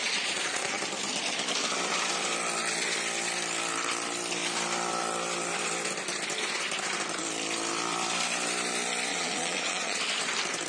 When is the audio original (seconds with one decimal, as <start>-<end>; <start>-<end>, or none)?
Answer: 0.8-9.1; 10.0-10.7